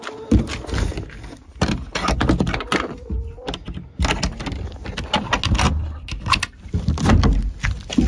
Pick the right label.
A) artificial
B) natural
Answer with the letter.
B